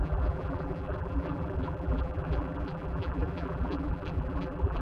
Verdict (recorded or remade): remade